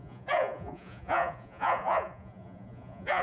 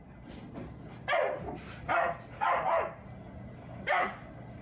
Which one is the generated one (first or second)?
first